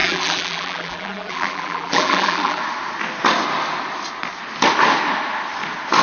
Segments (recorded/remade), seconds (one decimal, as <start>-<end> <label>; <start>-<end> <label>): 0.0-2.6 remade; 2.6-6.0 recorded